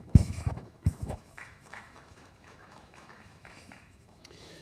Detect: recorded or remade remade